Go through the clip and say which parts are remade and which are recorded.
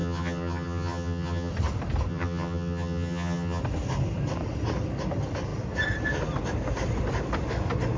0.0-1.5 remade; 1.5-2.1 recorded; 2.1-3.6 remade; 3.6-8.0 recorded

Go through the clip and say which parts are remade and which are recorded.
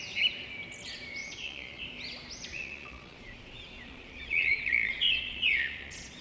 0.0-1.2 recorded; 1.2-1.8 remade; 1.8-2.5 recorded; 2.5-6.2 remade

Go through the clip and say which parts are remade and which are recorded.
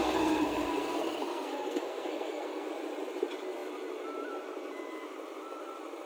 0.0-2.7 remade; 2.7-6.1 recorded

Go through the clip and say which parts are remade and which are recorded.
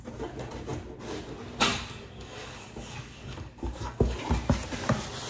0.0-1.7 recorded; 1.7-4.2 remade; 4.2-5.3 recorded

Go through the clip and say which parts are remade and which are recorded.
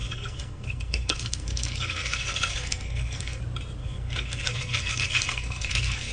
0.0-3.4 remade; 3.4-3.8 recorded; 3.8-6.1 remade